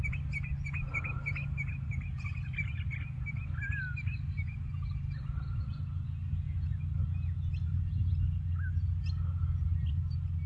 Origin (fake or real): real